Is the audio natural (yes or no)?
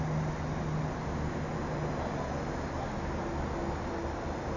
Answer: yes